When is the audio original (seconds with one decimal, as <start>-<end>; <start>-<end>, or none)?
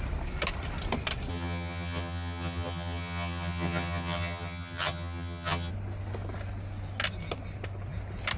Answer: 0.0-1.3; 5.7-8.4